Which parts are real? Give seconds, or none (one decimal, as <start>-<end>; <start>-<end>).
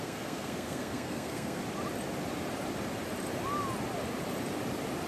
1.6-5.1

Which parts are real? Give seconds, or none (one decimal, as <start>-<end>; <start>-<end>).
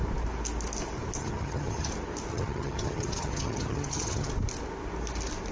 0.0-1.2; 1.9-2.3; 4.3-5.5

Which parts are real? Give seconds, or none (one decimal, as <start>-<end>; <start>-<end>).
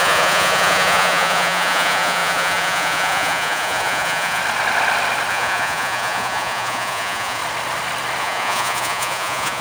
4.4-5.3; 7.4-8.2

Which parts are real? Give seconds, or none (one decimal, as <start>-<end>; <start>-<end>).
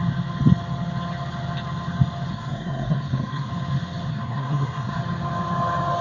0.0-2.3; 3.5-4.1; 5.0-6.0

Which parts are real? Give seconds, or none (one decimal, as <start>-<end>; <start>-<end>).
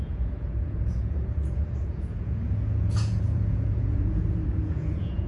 none